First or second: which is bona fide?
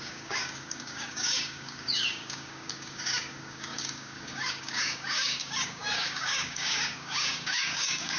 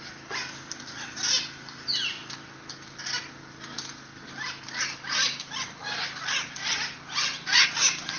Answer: second